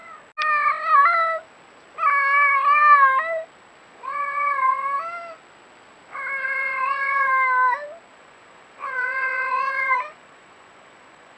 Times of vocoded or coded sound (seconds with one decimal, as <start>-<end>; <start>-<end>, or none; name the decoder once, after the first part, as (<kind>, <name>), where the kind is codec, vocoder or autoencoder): 3.8-4.8 (vocoder, Vocos); 6.4-7.3; 8.1-11.4